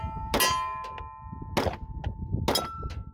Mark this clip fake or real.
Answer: real